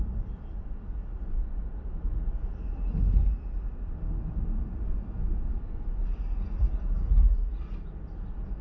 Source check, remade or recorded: recorded